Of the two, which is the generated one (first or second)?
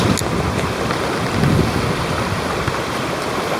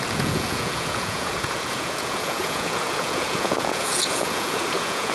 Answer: second